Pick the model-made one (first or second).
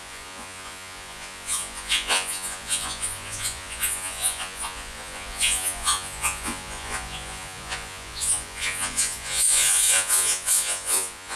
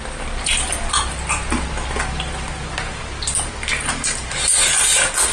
first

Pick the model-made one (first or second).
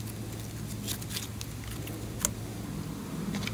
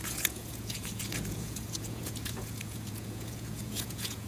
second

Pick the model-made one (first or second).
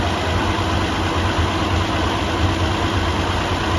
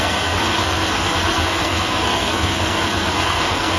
second